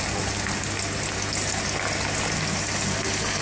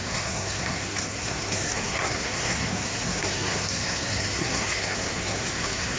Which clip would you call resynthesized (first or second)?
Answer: second